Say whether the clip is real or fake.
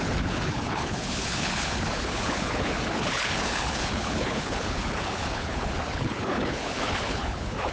fake